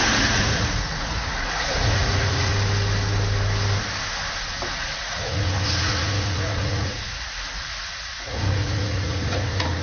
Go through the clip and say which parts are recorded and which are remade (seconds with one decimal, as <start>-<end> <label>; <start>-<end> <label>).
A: 0.0-2.5 remade; 2.5-4.7 recorded; 4.7-9.8 remade